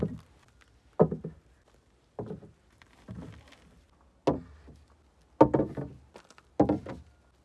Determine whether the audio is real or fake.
real